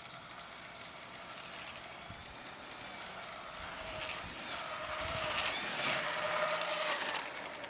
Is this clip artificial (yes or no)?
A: no